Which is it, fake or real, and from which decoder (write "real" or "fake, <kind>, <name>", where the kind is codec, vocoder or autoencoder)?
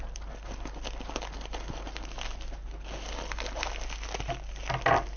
real